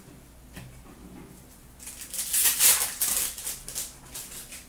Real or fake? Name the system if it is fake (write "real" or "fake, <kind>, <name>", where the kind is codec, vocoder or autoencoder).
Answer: real